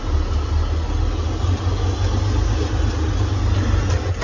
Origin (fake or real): real